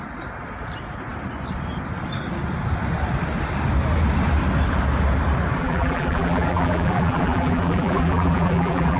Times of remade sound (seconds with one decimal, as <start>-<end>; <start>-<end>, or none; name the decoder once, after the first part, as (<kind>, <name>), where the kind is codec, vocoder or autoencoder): 5.6-9.0 (vocoder, BigVGAN v2)